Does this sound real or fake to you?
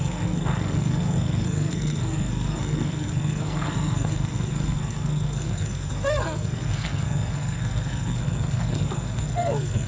fake